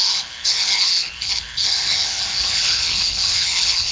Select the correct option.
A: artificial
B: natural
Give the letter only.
A